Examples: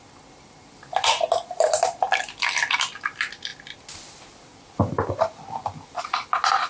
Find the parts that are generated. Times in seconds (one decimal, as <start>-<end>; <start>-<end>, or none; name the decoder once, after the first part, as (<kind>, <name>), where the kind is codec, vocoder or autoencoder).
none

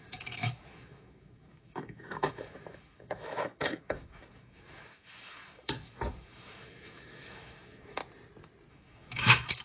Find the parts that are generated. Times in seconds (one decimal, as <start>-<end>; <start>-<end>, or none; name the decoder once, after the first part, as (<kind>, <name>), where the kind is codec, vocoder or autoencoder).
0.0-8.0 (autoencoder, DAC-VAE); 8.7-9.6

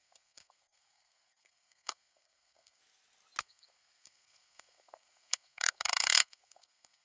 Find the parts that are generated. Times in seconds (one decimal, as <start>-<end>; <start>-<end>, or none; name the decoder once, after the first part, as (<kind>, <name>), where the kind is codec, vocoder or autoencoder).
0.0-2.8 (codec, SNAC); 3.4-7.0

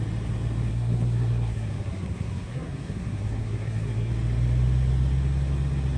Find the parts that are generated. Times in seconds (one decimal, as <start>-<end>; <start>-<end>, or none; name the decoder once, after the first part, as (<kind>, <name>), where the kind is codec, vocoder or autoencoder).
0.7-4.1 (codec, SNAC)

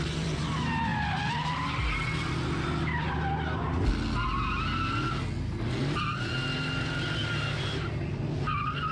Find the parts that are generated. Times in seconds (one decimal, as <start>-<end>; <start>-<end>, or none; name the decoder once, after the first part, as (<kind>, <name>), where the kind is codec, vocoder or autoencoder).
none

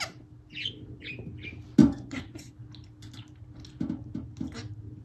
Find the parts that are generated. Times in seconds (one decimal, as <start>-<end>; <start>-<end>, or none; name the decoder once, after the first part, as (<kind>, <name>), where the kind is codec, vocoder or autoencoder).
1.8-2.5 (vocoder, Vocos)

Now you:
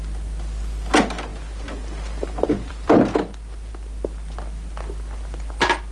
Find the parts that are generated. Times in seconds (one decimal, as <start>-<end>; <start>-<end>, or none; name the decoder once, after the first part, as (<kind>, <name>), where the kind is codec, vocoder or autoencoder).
1.3-3.7 (vocoder, BigVGAN v2)

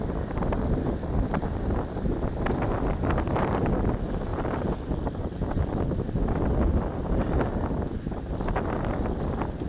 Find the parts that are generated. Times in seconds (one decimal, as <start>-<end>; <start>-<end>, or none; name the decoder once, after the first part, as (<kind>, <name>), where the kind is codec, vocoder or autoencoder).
none